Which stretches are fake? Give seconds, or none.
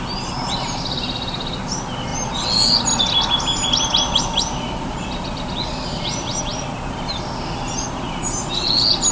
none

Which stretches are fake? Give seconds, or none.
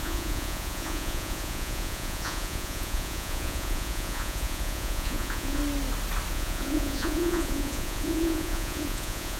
0.0-5.6 (vocoder, Vocos); 6.3-9.4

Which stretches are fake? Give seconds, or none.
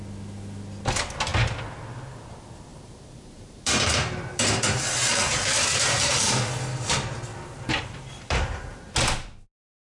2.7-6.3 (vocoder, BigVGAN v2); 7.3-8.8